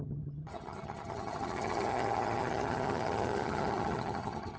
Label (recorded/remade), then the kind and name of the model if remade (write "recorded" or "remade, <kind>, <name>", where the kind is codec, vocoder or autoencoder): remade, vocoder, HiFi-GAN